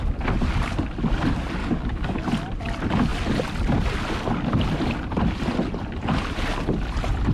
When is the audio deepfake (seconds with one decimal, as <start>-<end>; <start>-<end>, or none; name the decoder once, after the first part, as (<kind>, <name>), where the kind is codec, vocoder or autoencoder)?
1.6-2.2 (codec, DAC)